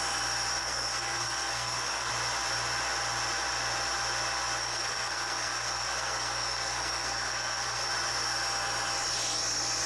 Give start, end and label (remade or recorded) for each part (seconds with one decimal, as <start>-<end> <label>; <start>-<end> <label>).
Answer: 0.0-0.6 recorded; 0.6-2.1 remade; 2.1-4.6 recorded; 4.6-7.9 remade; 7.9-9.9 recorded